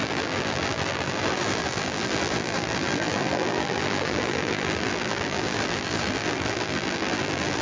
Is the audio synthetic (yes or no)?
yes